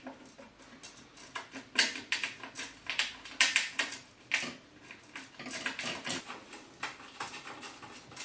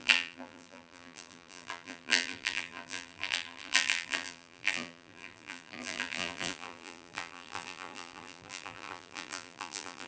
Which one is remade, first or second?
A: second